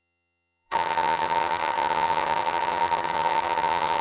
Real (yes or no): no